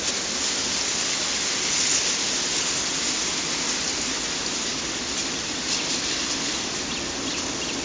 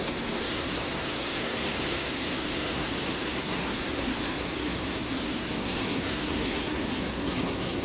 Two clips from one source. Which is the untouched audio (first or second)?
first